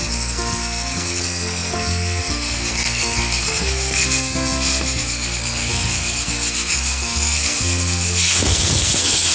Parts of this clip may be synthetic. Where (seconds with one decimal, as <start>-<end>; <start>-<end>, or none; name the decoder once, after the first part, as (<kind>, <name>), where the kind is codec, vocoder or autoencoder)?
0.0-9.3 (codec, SNAC)